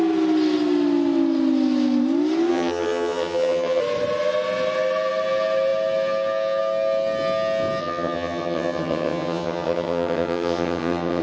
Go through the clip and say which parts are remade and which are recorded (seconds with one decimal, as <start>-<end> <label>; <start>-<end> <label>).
0.0-2.5 recorded; 2.5-3.8 remade; 3.8-7.8 recorded; 7.8-11.2 remade